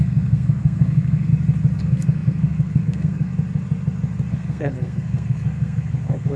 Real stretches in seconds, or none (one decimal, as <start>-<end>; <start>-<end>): 1.3-1.8; 3.3-4.3